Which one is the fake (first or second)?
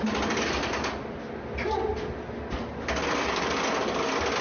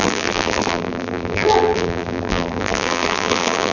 second